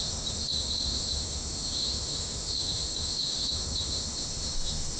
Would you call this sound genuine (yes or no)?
no